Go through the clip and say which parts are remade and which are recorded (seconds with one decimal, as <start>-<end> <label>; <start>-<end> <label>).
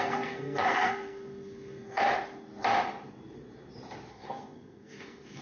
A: 0.0-2.0 remade; 2.0-4.1 recorded; 4.1-5.4 remade